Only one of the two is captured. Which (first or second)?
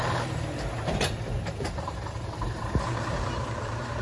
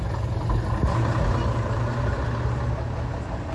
second